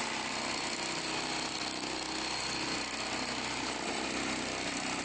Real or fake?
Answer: real